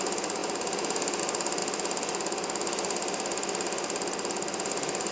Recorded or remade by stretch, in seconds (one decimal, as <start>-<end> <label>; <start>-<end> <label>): 0.0-5.1 recorded